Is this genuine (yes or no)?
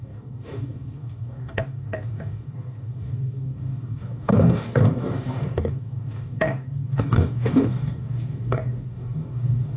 no